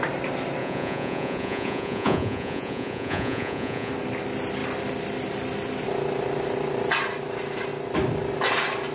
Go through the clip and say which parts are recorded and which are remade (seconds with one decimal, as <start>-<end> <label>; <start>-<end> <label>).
0.0-0.6 recorded; 0.6-3.9 remade; 3.9-8.9 recorded